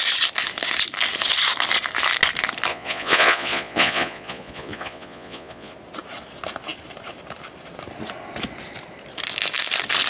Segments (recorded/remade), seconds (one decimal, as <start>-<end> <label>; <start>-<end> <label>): 0.0-2.7 recorded; 2.7-5.7 remade; 5.7-10.1 recorded